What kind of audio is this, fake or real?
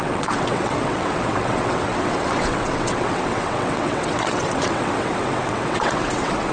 fake